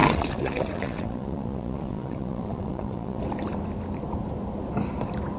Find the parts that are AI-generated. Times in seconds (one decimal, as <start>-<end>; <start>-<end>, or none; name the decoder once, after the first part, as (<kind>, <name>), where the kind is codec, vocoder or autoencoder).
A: 0.0-3.2 (vocoder, WaveNeXt)